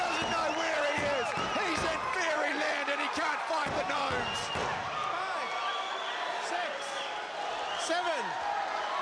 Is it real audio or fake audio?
real